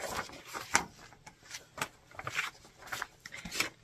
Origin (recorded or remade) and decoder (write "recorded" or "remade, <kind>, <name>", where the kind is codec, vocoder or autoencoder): recorded